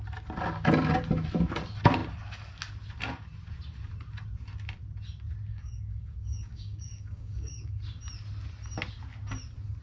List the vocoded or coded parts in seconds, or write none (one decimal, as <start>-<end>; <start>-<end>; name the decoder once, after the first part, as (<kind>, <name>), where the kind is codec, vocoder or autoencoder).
5.5-7.8 (codec, DAC)